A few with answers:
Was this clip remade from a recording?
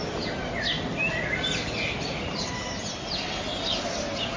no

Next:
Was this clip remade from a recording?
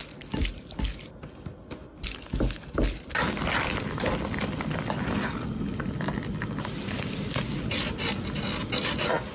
no